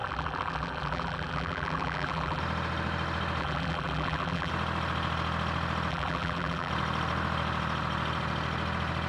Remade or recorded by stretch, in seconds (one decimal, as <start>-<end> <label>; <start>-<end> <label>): 0.0-2.4 remade; 2.4-3.4 recorded; 3.4-4.5 remade; 4.5-5.9 recorded; 5.9-6.7 remade; 6.7-9.1 recorded

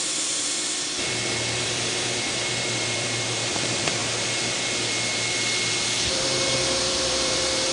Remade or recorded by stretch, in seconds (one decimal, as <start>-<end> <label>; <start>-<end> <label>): 0.0-4.0 remade; 4.0-6.8 recorded; 6.8-7.7 remade

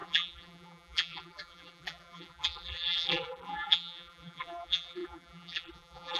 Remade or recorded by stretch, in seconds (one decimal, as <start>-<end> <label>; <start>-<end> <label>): 0.0-6.2 remade